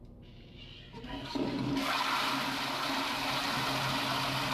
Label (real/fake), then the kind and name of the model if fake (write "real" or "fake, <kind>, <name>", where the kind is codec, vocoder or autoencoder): real